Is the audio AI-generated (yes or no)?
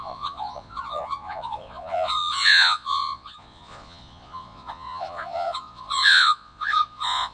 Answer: yes